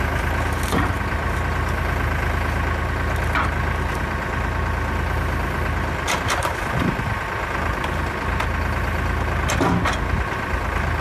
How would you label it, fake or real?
real